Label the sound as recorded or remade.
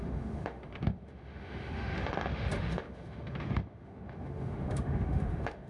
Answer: remade